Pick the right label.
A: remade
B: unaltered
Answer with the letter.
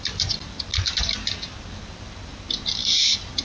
B